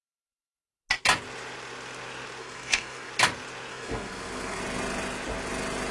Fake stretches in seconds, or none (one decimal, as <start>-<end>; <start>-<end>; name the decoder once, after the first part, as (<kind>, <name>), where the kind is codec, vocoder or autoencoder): 2.4-3.1 (codec, SNAC); 3.7-4.6